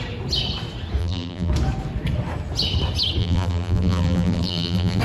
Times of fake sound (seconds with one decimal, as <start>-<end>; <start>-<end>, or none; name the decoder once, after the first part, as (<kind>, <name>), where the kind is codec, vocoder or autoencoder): 1.0-1.5 (vocoder, BigVGAN v2); 3.2-5.0